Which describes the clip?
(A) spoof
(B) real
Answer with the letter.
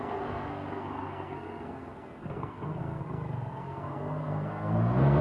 A